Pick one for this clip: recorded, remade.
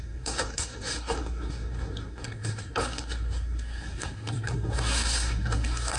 remade